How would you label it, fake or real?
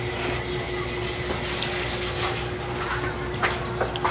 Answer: real